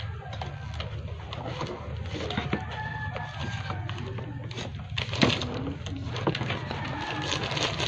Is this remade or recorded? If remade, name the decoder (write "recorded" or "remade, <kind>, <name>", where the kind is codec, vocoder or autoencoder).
recorded